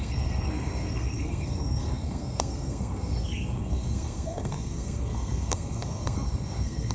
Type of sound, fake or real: fake